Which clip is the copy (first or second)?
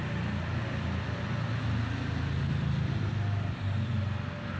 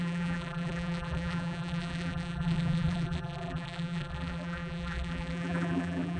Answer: second